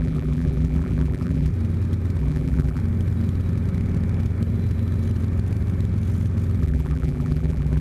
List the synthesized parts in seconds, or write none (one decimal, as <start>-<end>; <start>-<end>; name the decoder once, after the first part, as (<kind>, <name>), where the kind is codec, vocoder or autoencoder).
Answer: 0.0-1.5 (vocoder, BigVGAN v2); 2.2-2.8; 6.6-7.8